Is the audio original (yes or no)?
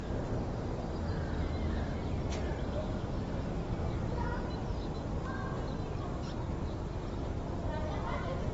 yes